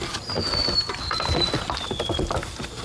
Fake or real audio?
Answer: real